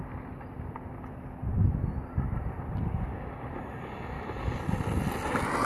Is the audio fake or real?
real